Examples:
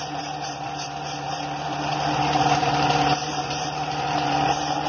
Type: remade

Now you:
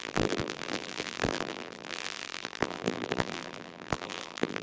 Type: remade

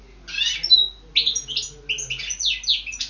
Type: recorded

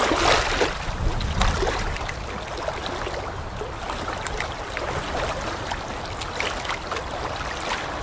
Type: recorded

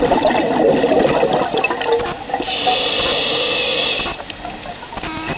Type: recorded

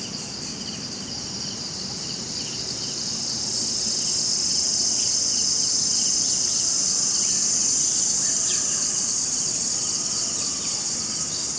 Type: recorded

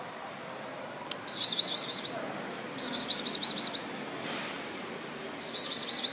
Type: recorded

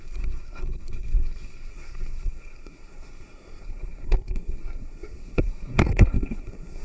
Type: remade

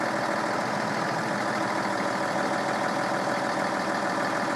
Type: recorded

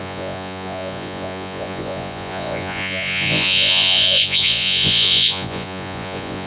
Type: remade